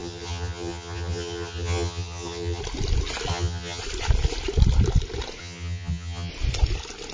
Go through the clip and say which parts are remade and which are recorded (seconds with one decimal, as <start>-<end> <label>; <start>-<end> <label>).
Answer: 0.0-2.6 remade; 2.6-3.3 recorded; 3.3-3.8 remade; 3.8-5.4 recorded; 5.4-6.3 remade; 6.3-7.1 recorded